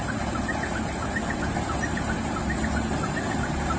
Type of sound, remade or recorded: recorded